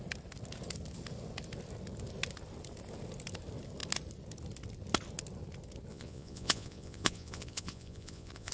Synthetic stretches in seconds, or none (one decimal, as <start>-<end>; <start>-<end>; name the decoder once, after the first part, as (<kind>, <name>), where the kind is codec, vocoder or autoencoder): 5.9-8.5 (vocoder, Vocos)